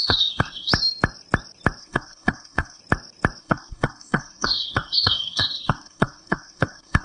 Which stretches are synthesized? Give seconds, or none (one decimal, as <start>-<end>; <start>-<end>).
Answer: 0.0-0.7; 1.8-2.8; 3.4-7.0